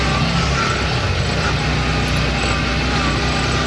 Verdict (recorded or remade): recorded